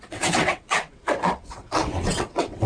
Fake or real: fake